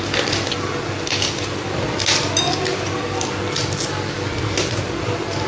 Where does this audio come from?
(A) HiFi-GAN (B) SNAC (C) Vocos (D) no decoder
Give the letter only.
D